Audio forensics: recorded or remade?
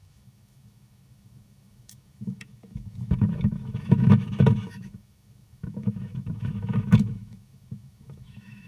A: remade